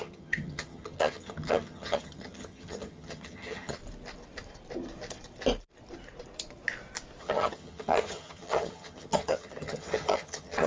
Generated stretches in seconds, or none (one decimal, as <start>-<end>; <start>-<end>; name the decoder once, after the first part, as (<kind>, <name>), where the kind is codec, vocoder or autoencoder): 0.0-3.8 (vocoder, HiFi-GAN); 7.2-10.7